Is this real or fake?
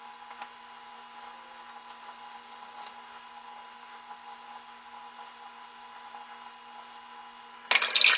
real